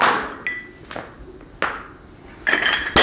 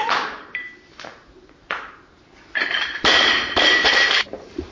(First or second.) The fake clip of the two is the second